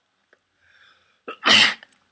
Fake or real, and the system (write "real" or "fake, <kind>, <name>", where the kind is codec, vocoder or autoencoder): real